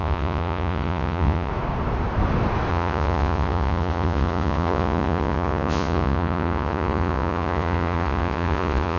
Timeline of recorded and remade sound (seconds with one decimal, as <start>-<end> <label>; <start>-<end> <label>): 0.0-1.5 remade; 1.5-2.7 recorded; 2.7-9.0 remade